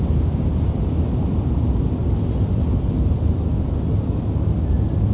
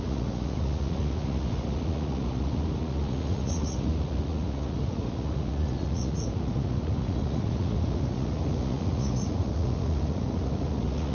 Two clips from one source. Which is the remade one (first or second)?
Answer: second